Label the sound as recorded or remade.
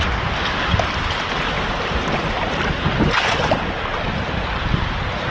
recorded